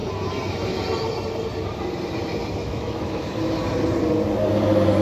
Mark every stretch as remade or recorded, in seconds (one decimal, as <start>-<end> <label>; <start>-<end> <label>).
0.0-2.6 recorded; 2.6-3.3 remade; 3.3-5.0 recorded